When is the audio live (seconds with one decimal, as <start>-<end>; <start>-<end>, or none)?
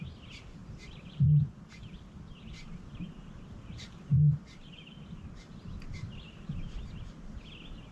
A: 0.0-7.9